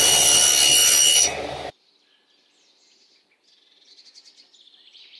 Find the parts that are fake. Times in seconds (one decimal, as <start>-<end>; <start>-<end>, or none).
none